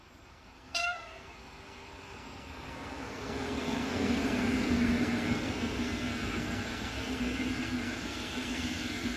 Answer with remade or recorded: remade